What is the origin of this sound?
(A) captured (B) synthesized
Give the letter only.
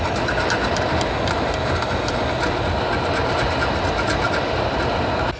A